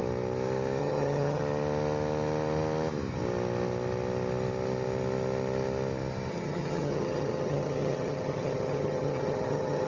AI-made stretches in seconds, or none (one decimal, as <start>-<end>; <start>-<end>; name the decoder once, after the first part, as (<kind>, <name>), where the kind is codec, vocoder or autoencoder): 0.8-1.4 (vocoder, HiFi-GAN); 6.3-9.9